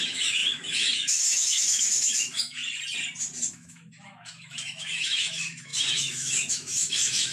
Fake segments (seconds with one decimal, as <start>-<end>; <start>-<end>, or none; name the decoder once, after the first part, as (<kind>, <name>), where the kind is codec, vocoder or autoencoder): 0.0-2.6 (autoencoder, DAC-VAE); 3.5-7.3